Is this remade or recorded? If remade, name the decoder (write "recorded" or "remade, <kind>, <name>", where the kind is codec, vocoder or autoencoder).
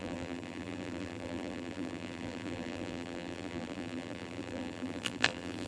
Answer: remade, vocoder, BigVGAN v2